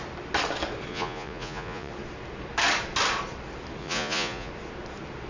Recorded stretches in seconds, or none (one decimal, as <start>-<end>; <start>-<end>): 0.0-0.9; 1.9-3.8; 4.5-5.3